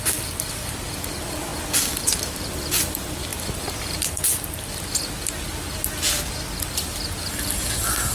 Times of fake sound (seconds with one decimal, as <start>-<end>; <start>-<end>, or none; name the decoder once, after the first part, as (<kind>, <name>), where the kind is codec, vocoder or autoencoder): none